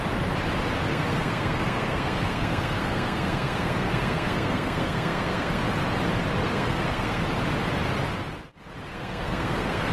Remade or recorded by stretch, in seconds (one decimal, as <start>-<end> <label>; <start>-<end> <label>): 0.0-0.9 recorded; 0.9-5.6 remade; 5.6-6.4 recorded; 6.4-7.2 remade; 7.2-8.9 recorded; 8.9-9.9 remade

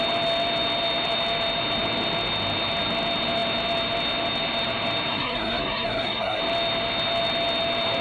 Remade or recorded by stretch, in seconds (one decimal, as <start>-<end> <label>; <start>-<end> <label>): 0.0-5.1 recorded; 5.1-6.4 remade; 6.4-8.0 recorded

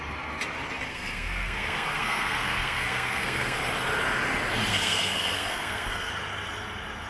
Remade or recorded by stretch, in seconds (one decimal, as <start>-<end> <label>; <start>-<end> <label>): 0.0-0.9 recorded; 0.9-3.6 remade; 3.6-4.7 recorded; 4.7-6.1 remade; 6.1-7.1 recorded

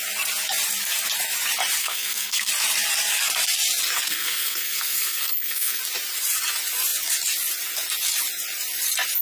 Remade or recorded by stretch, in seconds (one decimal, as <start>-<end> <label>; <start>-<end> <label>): 0.0-1.8 recorded; 1.8-2.5 remade; 2.5-4.1 recorded; 4.1-5.8 remade; 5.8-9.2 recorded

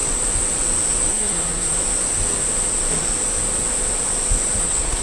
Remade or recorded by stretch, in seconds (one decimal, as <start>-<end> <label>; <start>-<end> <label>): 0.0-1.1 recorded; 1.1-1.8 remade; 1.8-4.6 recorded; 4.6-5.0 remade